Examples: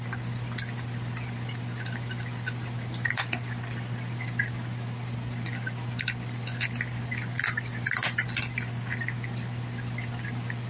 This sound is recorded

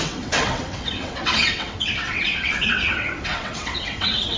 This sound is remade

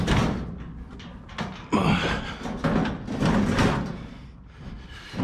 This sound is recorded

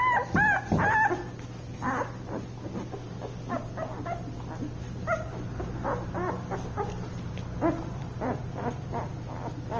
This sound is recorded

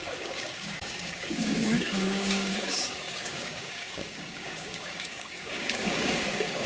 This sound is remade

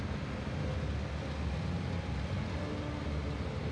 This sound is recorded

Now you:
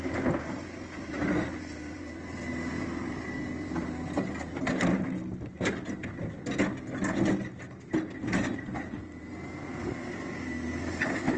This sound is recorded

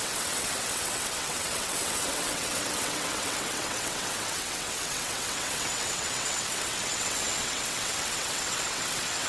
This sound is remade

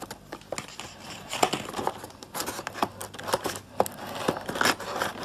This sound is recorded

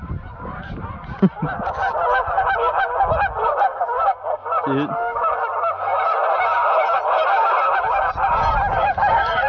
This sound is recorded